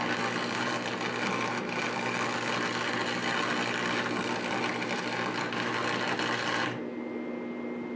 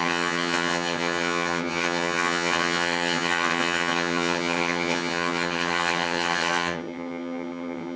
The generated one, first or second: second